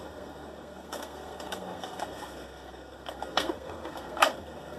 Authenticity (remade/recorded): remade